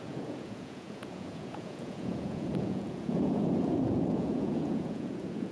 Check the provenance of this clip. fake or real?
fake